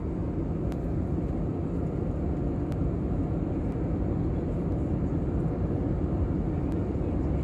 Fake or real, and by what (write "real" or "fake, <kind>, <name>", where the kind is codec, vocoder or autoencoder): real